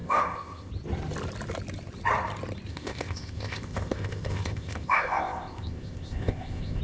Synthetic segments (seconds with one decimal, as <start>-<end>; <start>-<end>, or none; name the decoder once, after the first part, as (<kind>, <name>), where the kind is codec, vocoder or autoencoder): 0.0-0.7 (codec, ZipCodec); 2.7-6.8